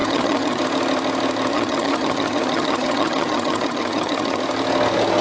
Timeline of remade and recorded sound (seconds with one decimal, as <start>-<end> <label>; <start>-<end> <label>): 0.0-0.6 remade; 0.6-1.5 recorded; 1.5-4.4 remade; 4.4-5.2 recorded